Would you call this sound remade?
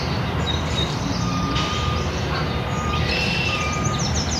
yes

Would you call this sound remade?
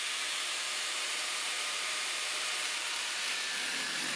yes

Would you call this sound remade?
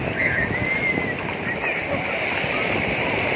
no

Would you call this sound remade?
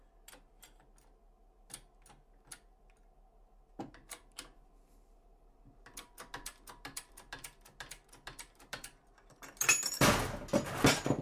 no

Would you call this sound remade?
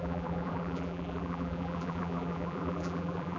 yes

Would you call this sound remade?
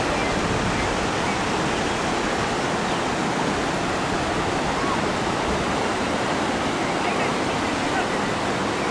no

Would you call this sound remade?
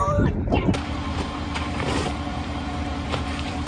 yes